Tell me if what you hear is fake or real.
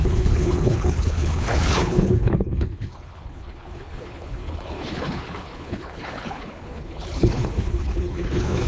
fake